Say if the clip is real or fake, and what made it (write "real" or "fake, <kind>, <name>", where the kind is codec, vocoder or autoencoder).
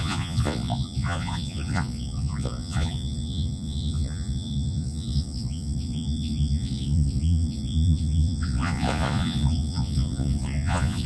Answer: fake, vocoder, Vocos